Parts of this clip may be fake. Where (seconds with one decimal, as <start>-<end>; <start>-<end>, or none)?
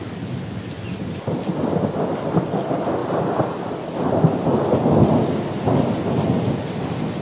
none